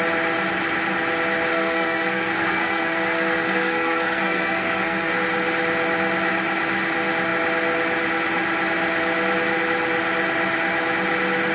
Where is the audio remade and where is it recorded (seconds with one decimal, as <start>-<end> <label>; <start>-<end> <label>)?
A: 0.0-1.5 recorded; 1.5-5.2 remade; 5.2-11.5 recorded